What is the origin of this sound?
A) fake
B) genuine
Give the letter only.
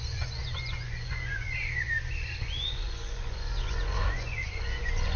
A